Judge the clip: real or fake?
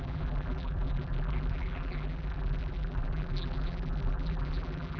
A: fake